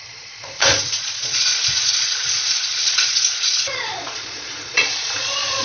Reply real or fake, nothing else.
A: fake